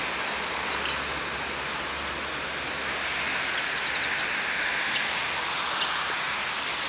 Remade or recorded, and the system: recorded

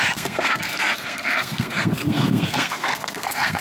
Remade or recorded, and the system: remade, codec, SNAC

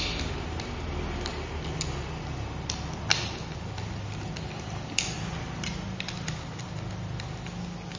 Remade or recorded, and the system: recorded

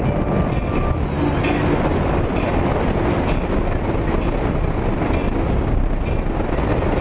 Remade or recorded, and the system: recorded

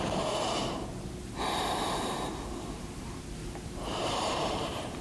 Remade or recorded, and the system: recorded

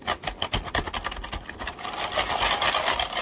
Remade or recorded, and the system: recorded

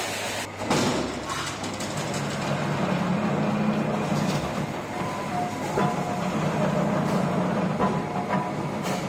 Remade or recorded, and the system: recorded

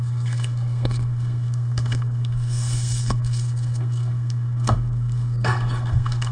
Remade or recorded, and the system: remade, codec, SNAC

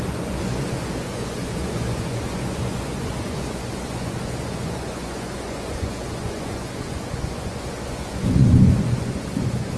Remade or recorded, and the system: remade, vocoder, Vocos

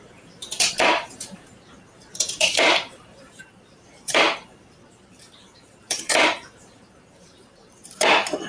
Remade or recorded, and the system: remade, vocoder, BigVGAN v2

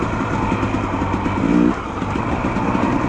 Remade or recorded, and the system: recorded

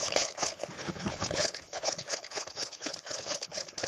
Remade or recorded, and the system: remade, codec, HILCodec